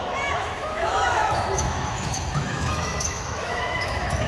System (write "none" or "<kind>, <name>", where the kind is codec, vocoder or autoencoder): autoencoder, DAC-VAE